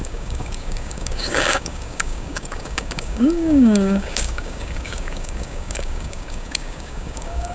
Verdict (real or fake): fake